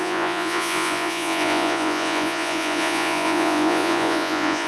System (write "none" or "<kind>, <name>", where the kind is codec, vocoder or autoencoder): vocoder, Vocos